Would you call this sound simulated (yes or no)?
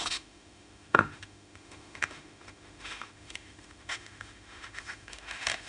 yes